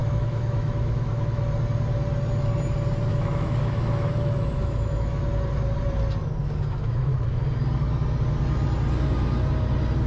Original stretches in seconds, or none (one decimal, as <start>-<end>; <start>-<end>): 1.4-3.1; 5.2-6.4; 7.4-10.1